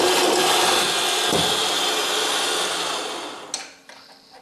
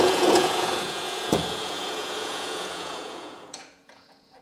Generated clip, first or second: second